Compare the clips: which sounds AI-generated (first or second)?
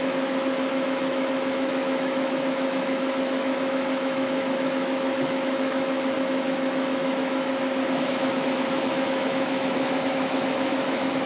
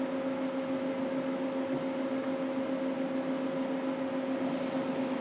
first